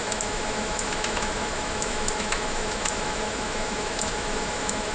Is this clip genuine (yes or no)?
no